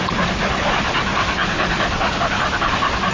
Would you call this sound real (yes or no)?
yes